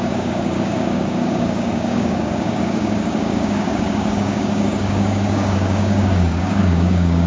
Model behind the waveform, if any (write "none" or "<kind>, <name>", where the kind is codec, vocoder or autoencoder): codec, DAC